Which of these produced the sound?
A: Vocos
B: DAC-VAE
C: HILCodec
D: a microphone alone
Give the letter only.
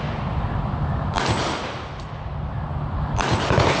D